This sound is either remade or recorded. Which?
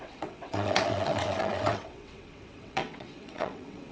remade